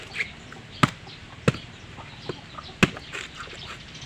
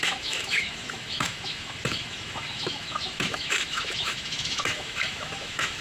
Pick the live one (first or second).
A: first